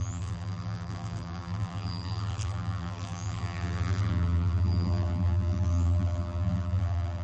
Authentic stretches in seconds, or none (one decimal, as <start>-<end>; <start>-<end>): none